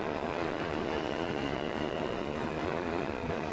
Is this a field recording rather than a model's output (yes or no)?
no